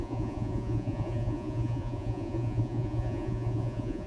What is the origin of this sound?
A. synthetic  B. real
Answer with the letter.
A